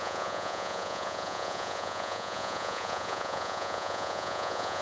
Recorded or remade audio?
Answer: remade